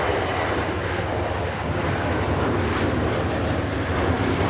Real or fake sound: fake